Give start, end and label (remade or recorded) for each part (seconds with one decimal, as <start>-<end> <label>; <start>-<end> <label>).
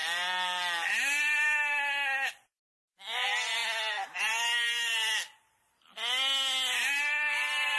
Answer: 0.0-7.8 recorded